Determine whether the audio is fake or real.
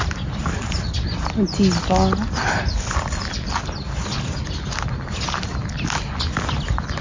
real